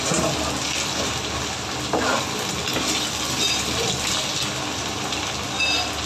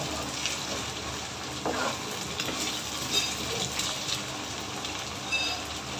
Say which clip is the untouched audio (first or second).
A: first